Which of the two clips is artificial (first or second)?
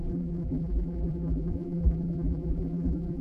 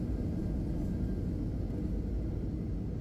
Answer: first